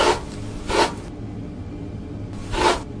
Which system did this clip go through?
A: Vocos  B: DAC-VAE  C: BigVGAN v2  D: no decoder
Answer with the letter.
D